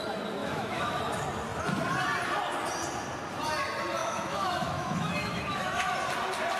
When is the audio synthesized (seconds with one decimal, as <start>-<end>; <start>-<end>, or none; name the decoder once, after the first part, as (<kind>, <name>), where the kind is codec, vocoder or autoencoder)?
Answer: 0.4-1.0 (autoencoder, DAC-VAE); 4.0-5.9